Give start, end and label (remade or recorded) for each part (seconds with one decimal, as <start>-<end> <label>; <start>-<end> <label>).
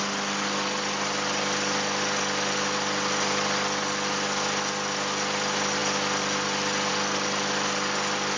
0.0-8.4 recorded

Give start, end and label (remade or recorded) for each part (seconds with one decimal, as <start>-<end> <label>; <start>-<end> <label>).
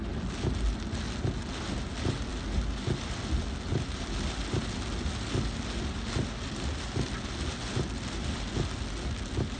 0.0-9.6 recorded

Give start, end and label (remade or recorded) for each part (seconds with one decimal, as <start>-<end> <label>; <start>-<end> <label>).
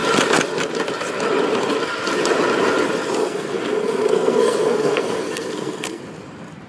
0.0-3.2 recorded; 3.2-6.0 remade; 6.0-6.7 recorded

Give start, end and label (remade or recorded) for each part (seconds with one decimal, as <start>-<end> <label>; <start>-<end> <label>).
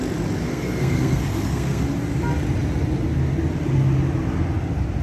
0.0-0.5 recorded; 0.5-1.8 remade; 1.8-5.0 recorded